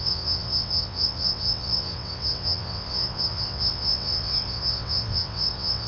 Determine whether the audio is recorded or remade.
remade